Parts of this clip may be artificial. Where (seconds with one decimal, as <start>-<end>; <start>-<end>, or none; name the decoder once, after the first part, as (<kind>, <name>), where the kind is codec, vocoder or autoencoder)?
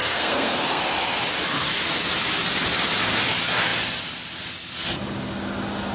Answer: 0.0-0.8 (codec, SNAC)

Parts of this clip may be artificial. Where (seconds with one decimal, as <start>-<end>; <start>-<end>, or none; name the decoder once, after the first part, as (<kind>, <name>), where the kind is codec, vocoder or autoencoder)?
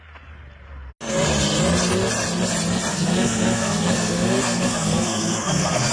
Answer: 2.9-5.9 (codec, SNAC)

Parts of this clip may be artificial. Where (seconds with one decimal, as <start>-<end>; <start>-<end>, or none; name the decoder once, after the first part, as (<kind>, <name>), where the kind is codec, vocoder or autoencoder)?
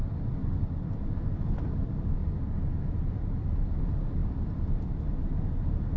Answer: none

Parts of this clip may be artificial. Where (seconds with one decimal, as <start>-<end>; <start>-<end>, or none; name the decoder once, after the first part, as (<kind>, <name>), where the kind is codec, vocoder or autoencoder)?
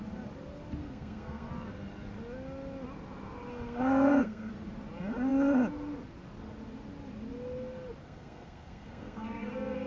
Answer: 0.8-1.5 (codec, SNAC); 3.5-4.5; 8.0-9.5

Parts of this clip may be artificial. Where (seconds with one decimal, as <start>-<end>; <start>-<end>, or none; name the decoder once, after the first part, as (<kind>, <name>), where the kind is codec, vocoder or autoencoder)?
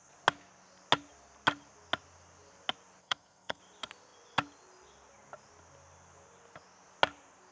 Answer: 3.0-3.6 (codec, SNAC)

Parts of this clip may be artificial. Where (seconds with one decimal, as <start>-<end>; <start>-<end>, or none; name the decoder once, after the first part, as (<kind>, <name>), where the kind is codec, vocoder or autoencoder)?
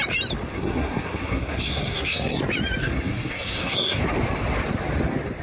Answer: 0.5-2.4 (codec, SNAC); 2.8-4.0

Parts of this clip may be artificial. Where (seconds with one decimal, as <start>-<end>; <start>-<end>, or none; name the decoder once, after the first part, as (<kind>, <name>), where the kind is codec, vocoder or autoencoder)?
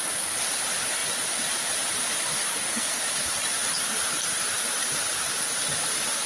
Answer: 2.5-3.0 (codec, SNAC)